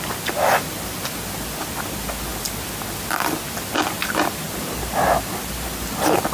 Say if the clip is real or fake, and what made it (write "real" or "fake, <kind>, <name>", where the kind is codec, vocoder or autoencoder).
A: real